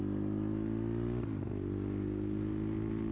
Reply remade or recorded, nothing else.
recorded